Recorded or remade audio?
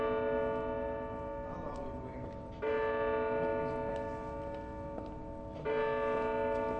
recorded